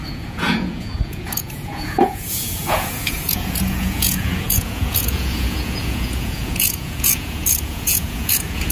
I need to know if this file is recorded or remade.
remade